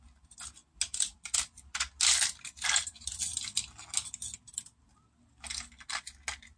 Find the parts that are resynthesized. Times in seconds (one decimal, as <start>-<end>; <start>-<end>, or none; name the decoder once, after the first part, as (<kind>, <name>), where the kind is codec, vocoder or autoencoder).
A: none

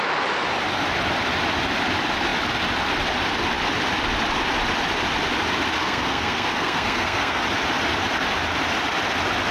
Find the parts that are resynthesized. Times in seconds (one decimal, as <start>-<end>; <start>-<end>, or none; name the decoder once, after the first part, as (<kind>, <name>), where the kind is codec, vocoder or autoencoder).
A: 5.8-7.4 (codec, SNAC)

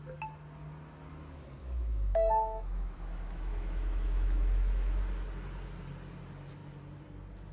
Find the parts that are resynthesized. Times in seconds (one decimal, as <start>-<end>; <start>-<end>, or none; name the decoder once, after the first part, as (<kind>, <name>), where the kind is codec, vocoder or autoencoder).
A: 1.6-5.0 (autoencoder, DAC-VAE)

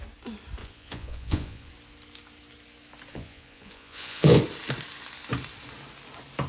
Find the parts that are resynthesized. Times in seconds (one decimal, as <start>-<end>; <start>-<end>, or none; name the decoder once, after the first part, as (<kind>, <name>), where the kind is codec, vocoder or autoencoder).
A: 0.6-1.7 (vocoder, Vocos); 3.1-4.4

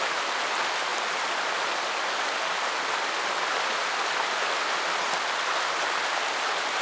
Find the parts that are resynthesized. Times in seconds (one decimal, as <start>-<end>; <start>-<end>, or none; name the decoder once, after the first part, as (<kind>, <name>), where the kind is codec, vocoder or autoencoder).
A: none

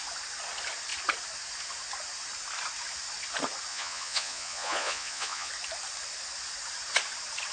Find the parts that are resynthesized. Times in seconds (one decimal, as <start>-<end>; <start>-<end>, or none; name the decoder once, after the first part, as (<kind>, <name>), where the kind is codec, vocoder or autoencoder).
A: 3.7-5.5 (vocoder, Vocos)

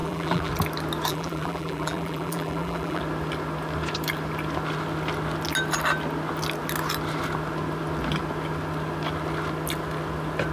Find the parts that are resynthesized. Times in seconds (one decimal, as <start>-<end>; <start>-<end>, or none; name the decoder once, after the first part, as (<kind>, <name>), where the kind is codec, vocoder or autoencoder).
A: 0.0-0.5 (vocoder, BigVGAN v2); 1.1-3.0